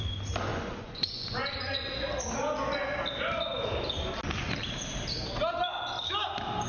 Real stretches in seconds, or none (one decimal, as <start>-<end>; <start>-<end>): 0.0-0.5; 1.9-6.7